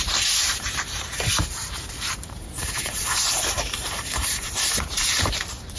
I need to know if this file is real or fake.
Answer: fake